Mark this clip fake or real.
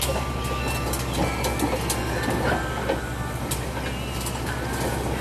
real